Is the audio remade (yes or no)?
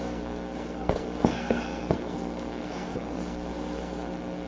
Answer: yes